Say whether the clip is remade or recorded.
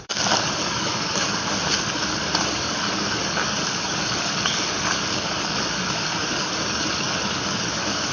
remade